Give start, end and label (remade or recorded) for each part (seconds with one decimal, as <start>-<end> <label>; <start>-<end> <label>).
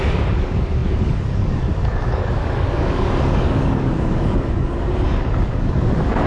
0.0-6.3 remade